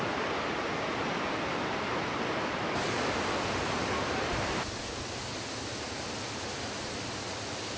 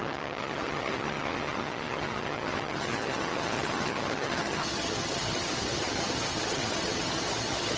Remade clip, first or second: second